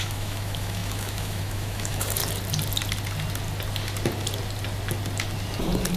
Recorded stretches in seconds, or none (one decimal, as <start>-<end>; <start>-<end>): 2.2-6.0